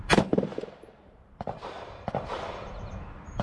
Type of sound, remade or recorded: remade